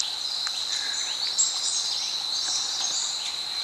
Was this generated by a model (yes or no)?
no